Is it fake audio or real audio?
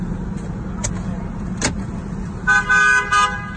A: real